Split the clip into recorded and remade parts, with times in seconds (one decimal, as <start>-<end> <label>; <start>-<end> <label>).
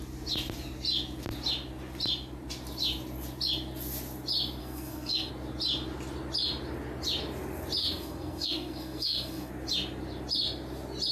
0.0-4.6 recorded; 4.6-5.3 remade; 5.3-7.8 recorded; 7.8-9.5 remade; 9.5-11.1 recorded